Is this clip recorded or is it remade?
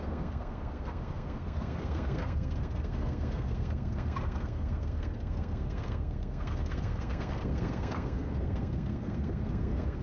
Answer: remade